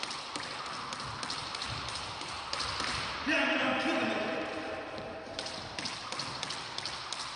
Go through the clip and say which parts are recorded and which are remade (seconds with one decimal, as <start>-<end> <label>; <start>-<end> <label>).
0.0-1.4 recorded; 1.4-5.8 remade; 5.8-7.4 recorded